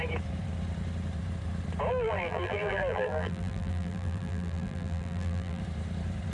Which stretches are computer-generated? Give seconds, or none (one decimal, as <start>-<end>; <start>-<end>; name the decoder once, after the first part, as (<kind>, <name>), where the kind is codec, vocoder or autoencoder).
1.9-5.6 (vocoder, BigVGAN v2)